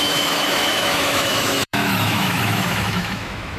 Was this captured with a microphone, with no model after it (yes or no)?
no